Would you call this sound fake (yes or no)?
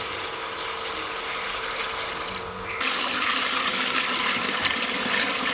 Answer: no